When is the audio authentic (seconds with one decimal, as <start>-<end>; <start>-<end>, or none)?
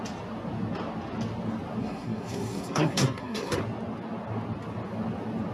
0.0-1.8; 3.6-5.5